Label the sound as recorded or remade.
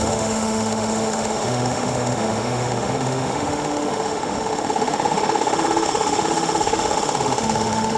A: remade